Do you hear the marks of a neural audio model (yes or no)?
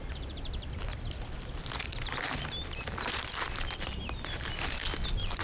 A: no